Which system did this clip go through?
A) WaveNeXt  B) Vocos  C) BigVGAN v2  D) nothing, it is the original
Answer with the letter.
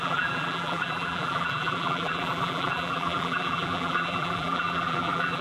C